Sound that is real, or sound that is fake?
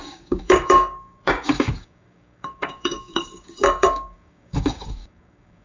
fake